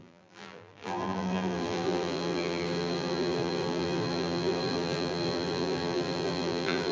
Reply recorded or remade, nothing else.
remade